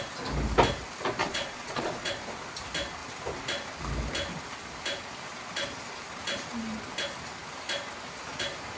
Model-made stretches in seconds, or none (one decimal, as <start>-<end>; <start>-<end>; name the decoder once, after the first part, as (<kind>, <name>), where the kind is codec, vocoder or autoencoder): 1.2-2.1 (vocoder, Vocos)